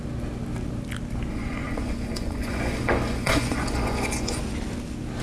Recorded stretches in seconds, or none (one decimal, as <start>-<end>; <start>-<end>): 0.0-1.3; 4.4-5.2